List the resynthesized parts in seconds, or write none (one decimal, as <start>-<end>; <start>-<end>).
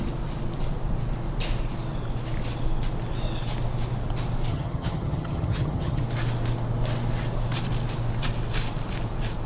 4.5-6.0